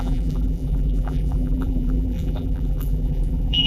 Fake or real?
fake